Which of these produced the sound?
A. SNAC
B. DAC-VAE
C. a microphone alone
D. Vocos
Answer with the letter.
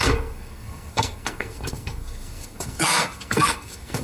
A